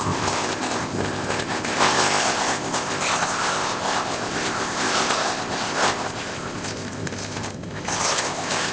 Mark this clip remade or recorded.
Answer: remade